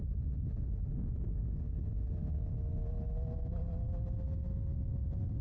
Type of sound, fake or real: real